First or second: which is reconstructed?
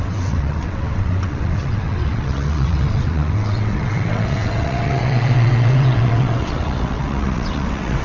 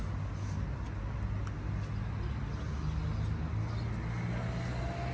first